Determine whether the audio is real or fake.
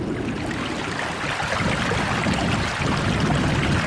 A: real